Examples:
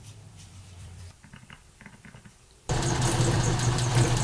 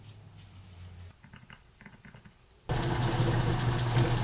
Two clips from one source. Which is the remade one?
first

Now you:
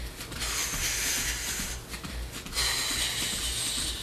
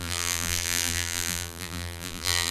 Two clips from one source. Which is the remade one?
second